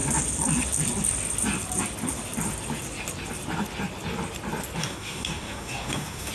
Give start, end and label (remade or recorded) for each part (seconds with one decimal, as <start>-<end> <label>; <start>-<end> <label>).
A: 0.0-4.8 recorded; 4.8-6.3 remade